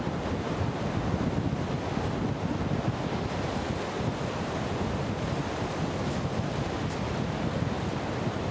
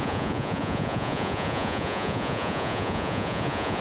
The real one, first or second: first